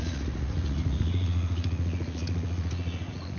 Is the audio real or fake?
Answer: fake